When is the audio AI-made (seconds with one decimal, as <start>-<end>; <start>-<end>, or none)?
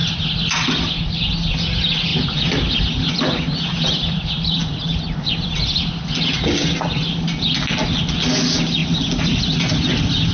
none